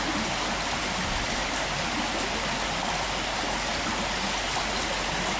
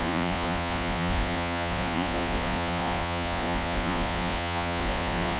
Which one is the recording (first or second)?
first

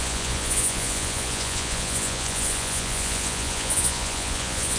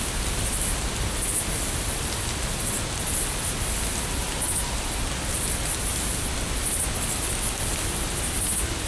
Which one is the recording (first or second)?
second